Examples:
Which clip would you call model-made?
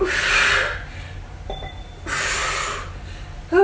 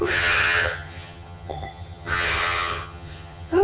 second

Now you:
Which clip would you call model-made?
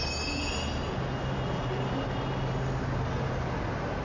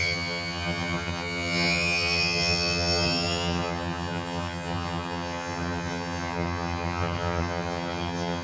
second